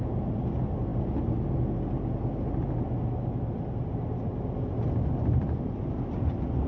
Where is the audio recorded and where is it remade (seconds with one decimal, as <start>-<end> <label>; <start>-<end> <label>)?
0.0-6.7 recorded